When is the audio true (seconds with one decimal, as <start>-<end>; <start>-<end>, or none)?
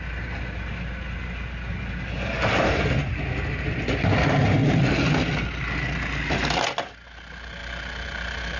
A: 0.0-8.6